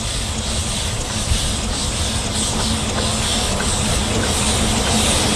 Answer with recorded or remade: recorded